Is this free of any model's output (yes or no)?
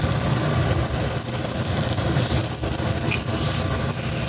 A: yes